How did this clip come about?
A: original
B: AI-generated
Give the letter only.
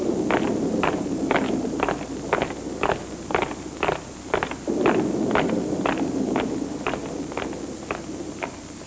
A